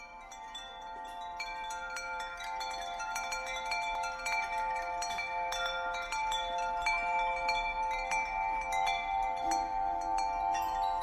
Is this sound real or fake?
fake